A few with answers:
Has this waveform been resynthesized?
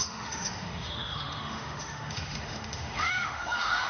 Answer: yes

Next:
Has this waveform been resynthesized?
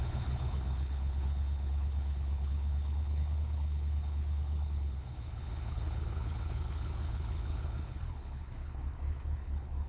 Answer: yes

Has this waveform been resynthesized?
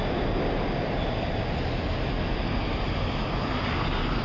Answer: no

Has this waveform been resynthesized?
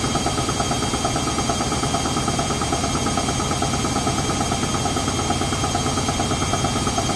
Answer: no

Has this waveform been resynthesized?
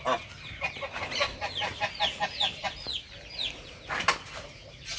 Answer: no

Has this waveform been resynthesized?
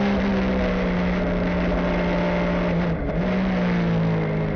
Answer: no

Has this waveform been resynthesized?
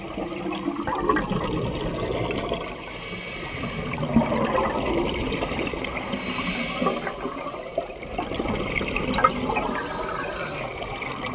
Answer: no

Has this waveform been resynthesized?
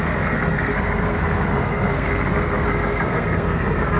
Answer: yes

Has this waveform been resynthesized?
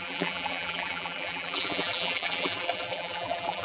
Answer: yes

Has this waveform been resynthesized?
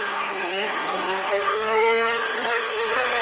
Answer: yes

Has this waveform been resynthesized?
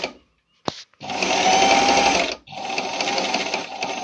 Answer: no